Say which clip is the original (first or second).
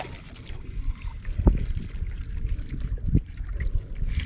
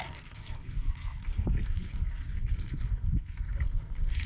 first